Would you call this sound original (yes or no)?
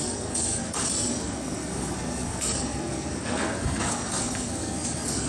no